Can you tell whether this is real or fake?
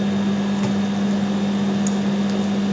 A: real